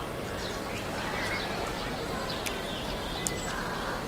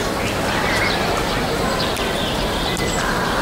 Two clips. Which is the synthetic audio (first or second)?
second